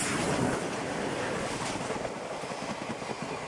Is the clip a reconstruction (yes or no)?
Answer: no